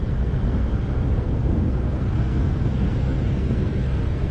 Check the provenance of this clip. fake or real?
fake